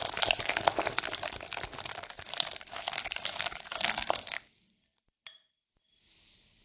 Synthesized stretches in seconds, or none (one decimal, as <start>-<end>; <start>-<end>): 0.0-0.5